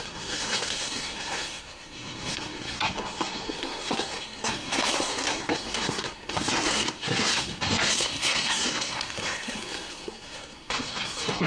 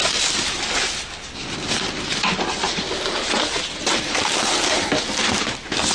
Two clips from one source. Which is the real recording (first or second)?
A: second